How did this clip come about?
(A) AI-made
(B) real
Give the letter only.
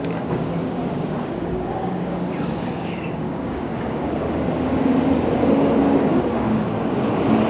A